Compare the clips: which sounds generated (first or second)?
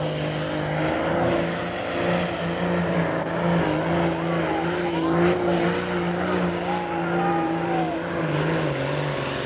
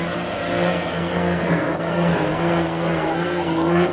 second